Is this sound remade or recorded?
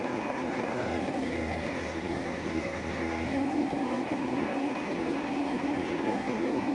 remade